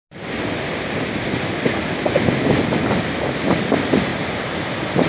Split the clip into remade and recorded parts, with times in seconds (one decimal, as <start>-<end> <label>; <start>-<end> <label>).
0.0-4.1 recorded; 4.1-4.6 remade; 4.6-5.1 recorded